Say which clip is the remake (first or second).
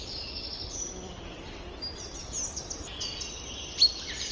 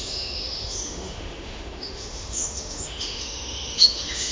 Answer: second